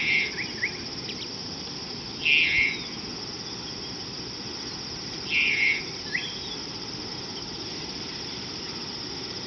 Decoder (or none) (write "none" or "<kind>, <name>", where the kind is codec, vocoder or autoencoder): none